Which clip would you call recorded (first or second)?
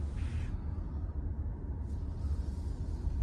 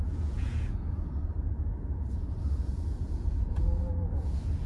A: first